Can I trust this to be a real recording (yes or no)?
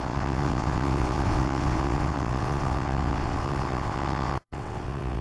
no